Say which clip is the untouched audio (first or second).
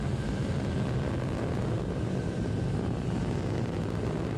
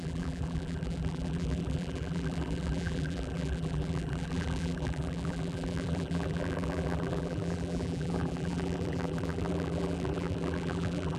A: first